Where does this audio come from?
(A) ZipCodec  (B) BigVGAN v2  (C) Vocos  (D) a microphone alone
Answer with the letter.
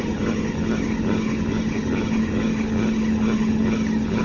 D